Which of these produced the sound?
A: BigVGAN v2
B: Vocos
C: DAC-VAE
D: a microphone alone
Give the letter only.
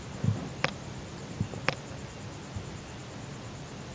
D